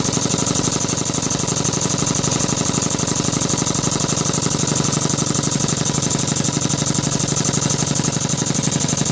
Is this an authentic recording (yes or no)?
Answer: yes